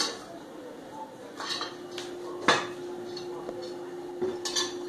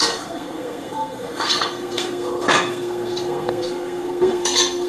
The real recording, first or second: first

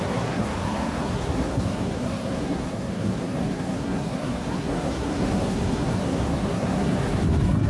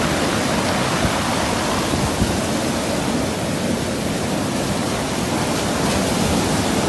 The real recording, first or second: second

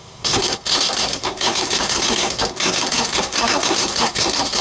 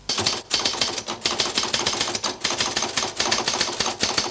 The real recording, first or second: second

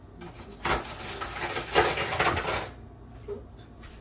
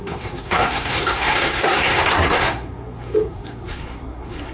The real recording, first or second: first